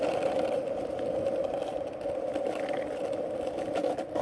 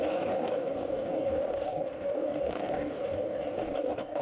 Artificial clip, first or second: second